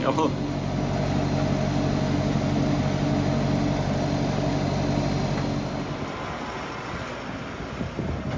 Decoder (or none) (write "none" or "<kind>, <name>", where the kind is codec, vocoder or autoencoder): none